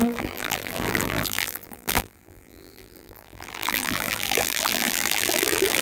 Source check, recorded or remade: remade